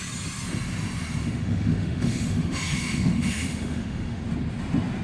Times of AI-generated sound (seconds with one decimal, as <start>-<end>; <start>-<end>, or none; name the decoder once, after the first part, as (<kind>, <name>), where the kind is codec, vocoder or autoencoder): 1.2-4.2 (autoencoder, DAC-VAE)